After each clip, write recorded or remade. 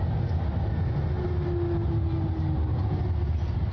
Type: recorded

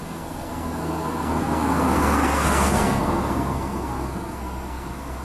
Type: remade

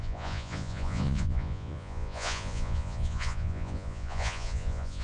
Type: remade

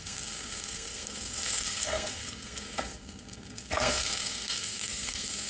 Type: remade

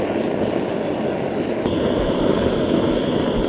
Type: recorded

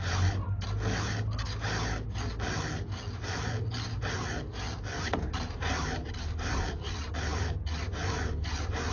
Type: recorded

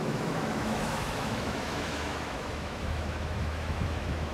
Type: remade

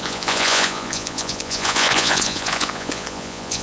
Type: remade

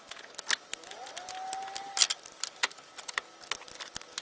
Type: recorded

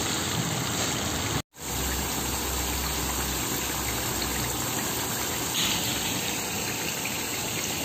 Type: recorded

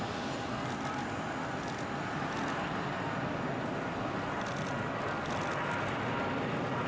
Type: recorded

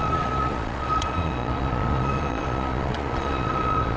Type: remade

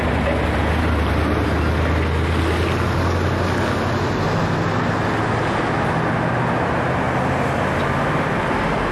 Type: recorded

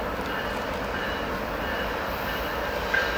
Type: recorded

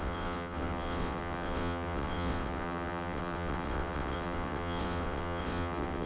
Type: remade